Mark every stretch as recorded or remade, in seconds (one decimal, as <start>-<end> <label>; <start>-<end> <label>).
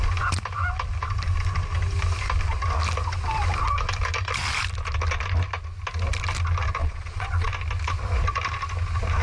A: 0.0-6.8 recorded; 6.8-7.5 remade; 7.5-9.2 recorded